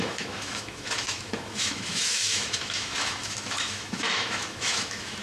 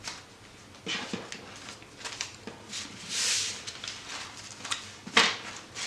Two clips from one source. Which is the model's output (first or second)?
first